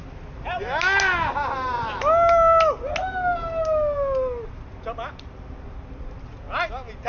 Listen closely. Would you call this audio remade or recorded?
recorded